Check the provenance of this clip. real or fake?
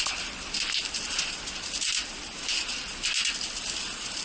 real